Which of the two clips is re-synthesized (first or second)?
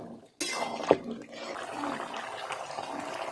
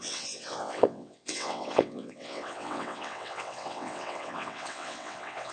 second